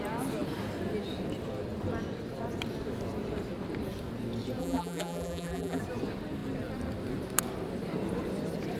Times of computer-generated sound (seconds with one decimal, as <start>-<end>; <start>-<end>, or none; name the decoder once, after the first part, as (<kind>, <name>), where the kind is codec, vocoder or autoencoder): 4.6-5.8 (vocoder, BigVGAN v2)